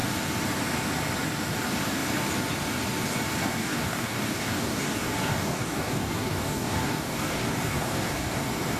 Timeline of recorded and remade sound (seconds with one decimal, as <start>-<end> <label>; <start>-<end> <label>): 0.0-3.6 recorded; 3.6-8.4 remade; 8.4-8.8 recorded